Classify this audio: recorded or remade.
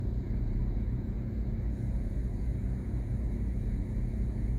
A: remade